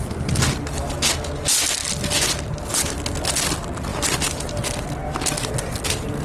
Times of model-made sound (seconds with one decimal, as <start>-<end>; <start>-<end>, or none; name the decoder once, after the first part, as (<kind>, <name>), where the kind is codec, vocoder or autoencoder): 3.9-4.6 (vocoder, BigVGAN v2)